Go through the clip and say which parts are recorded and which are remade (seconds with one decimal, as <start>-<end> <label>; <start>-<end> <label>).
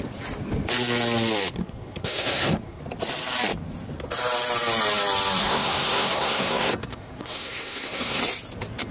0.0-1.6 recorded; 1.6-2.8 remade; 2.8-5.4 recorded; 5.4-8.2 remade; 8.2-8.9 recorded